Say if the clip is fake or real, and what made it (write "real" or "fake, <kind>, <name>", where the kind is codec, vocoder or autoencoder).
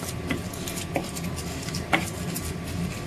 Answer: real